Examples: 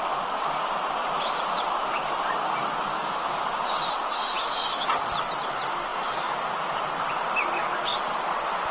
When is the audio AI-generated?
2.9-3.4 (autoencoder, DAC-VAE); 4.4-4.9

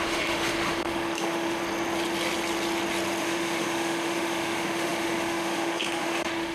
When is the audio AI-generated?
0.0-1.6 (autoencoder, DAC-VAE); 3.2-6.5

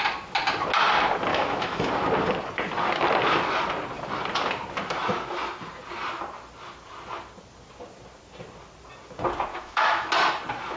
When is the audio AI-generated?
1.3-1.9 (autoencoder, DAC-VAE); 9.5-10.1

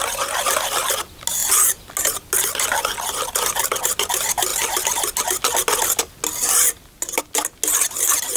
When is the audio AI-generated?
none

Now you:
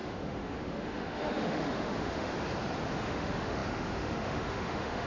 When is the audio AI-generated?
0.0-2.3 (autoencoder, DAC-VAE); 3.0-5.1